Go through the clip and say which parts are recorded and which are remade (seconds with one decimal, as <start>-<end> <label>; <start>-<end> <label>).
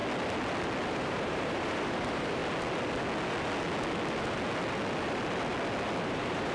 0.0-0.9 recorded; 0.9-2.4 remade; 2.4-6.0 recorded; 6.0-6.5 remade